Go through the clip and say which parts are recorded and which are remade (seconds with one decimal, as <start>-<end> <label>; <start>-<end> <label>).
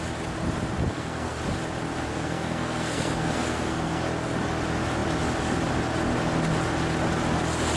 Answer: 0.0-0.9 recorded; 0.9-1.4 remade; 1.4-2.1 recorded; 2.1-4.0 remade; 4.0-7.8 recorded